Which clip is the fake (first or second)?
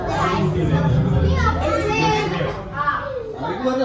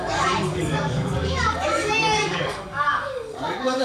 second